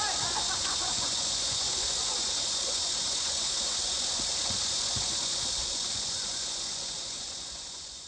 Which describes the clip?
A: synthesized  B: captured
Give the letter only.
A